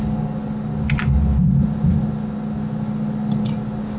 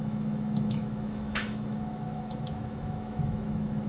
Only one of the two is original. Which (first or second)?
first